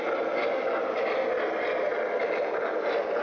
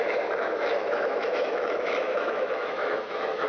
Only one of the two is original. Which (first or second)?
first